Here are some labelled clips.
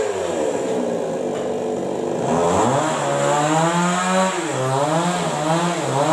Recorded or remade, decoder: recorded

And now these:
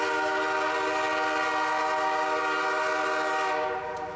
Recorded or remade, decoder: recorded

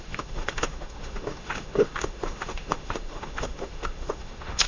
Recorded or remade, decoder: remade, autoencoder, DAC-VAE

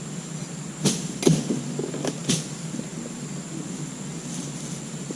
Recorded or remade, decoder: recorded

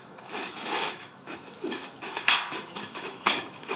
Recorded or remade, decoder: remade, autoencoder, DAC-VAE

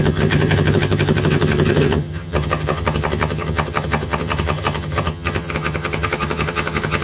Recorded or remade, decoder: remade, vocoder, HiFi-GAN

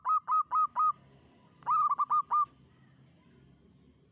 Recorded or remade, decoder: recorded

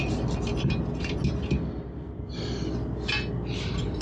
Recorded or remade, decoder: recorded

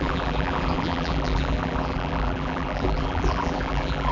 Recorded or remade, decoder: remade, vocoder, BigVGAN v2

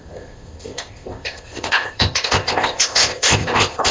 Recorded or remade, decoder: remade, codec, ZipCodec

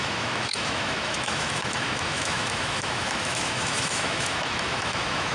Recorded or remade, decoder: remade, autoencoder, DAC-VAE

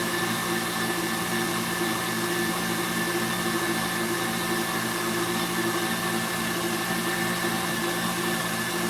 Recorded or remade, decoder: recorded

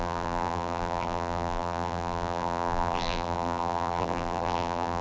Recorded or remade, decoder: remade, vocoder, BigVGAN v2